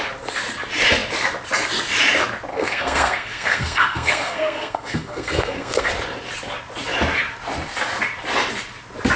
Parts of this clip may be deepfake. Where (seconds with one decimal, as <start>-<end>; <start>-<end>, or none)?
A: 2.5-5.9